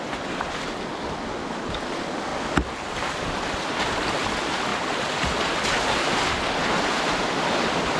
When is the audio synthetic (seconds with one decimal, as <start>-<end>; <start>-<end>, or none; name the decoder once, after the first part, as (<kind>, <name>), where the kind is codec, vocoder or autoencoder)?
none